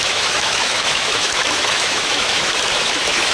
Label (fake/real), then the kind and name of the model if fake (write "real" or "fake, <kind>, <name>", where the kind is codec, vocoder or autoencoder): fake, autoencoder, DAC-VAE